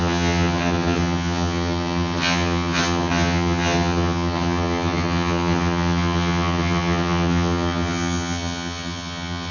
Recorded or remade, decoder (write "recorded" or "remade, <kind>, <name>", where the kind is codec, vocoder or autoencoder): remade, vocoder, HiFi-GAN